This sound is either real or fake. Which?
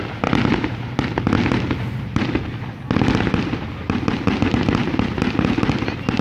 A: real